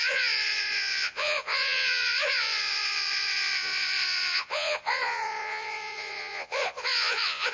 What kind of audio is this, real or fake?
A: fake